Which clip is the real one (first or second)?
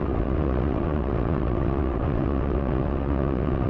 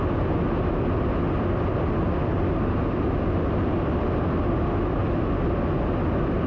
second